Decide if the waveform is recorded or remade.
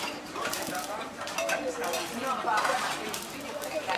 remade